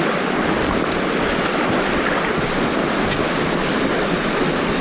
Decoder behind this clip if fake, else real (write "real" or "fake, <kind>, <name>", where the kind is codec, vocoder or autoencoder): real